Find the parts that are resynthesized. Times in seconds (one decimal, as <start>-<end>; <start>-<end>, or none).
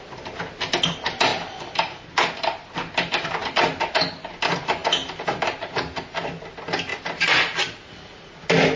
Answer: 1.3-2.1; 4.8-6.0